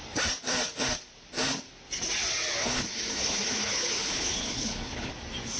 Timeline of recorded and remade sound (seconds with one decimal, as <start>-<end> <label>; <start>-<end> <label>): 0.0-2.6 recorded; 2.6-5.1 remade; 5.1-5.6 recorded